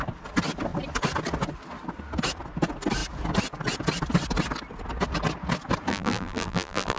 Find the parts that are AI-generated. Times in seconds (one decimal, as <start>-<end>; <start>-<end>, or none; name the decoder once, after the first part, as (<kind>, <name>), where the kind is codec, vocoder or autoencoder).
5.9-7.0 (vocoder, BigVGAN v2)